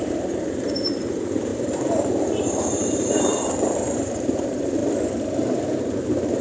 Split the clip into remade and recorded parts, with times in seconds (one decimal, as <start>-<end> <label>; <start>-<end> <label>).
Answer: 0.0-4.8 remade; 4.8-6.0 recorded; 6.0-6.4 remade